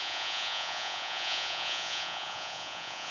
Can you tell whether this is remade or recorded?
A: remade